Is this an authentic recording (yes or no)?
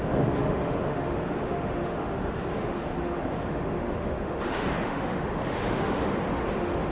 no